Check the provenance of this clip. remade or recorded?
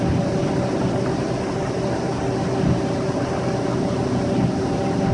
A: recorded